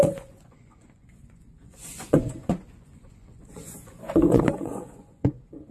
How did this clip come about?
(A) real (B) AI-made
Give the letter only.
B